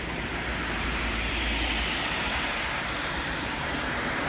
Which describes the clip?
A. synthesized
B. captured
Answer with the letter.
A